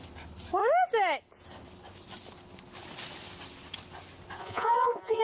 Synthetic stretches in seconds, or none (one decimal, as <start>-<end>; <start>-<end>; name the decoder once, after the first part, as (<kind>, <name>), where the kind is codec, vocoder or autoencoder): 4.4-5.2 (vocoder, Vocos)